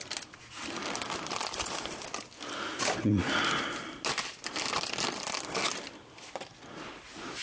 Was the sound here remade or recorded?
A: recorded